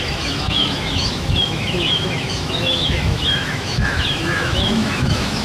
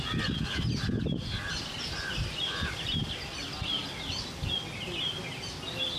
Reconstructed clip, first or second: first